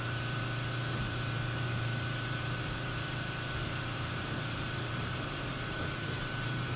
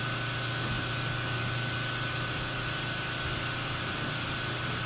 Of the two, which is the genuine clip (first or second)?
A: second